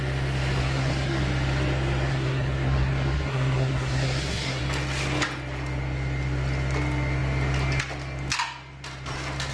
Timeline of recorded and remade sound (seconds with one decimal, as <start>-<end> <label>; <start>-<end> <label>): 0.0-0.6 recorded; 0.6-1.2 remade; 1.2-2.1 recorded; 2.1-4.6 remade; 4.6-9.5 recorded